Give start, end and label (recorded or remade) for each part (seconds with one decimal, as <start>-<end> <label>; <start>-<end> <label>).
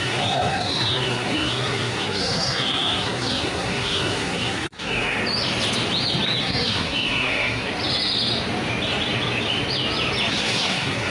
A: 0.0-5.2 remade; 5.2-6.4 recorded; 6.4-7.7 remade; 7.7-10.3 recorded; 10.3-11.1 remade